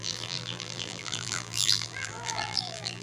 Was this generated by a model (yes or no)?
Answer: yes